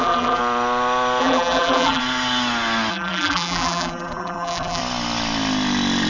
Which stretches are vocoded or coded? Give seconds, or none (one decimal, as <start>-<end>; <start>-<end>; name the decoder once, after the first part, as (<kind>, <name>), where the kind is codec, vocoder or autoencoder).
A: 0.0-0.4 (vocoder, BigVGAN v2); 1.2-2.0; 2.9-4.8